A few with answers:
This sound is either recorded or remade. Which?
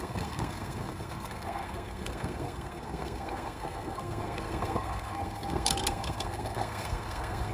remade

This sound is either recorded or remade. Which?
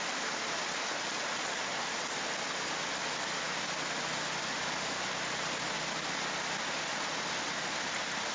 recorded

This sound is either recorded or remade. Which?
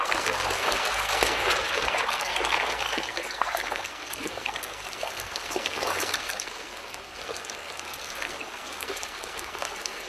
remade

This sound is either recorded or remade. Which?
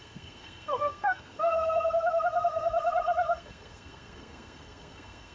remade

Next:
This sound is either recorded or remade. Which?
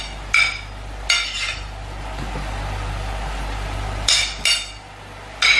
recorded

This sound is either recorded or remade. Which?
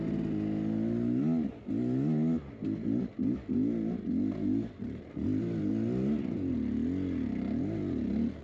recorded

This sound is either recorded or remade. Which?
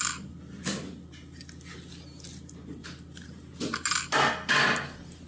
recorded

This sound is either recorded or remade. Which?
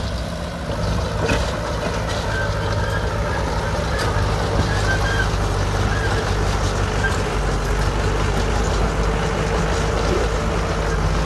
recorded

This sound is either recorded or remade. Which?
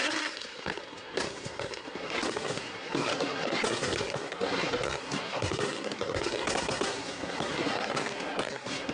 remade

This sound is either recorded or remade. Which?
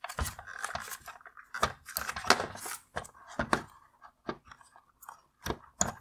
recorded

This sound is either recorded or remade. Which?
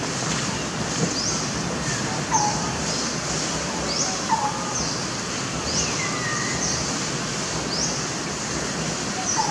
recorded